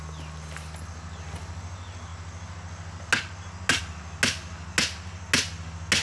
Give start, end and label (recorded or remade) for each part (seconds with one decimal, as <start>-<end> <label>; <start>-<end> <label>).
0.0-6.0 recorded